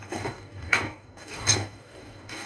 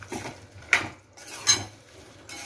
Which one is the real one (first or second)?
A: second